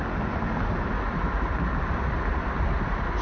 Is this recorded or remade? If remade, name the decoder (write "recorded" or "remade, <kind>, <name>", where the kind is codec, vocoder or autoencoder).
recorded